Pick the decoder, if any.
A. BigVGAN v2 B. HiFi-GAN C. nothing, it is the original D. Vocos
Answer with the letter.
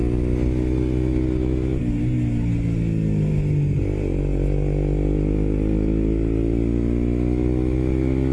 C